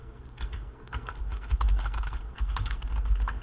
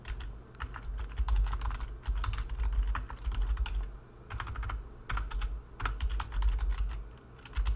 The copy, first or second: first